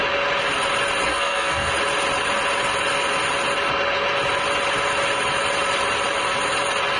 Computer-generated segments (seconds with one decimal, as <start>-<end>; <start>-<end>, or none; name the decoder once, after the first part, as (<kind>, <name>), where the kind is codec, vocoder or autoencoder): 1.1-1.7 (codec, SNAC)